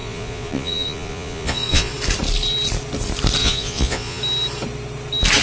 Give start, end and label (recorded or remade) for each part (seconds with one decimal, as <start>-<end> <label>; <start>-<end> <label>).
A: 0.0-1.9 remade; 1.9-3.4 recorded; 3.4-4.2 remade; 4.2-5.4 recorded